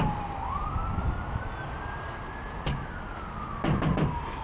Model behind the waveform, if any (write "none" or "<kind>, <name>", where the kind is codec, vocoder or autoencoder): none